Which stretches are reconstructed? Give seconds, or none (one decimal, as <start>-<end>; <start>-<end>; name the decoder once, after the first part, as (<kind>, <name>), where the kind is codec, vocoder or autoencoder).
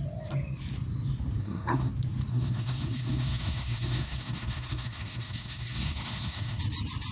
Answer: 1.4-1.9 (codec, SNAC); 2.3-6.6